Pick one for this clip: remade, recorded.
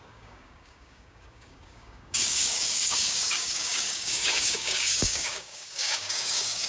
remade